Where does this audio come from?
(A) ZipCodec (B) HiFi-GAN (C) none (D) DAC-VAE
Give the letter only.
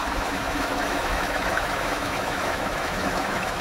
D